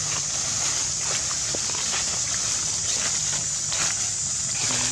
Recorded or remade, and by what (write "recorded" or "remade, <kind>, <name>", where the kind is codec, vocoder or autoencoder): recorded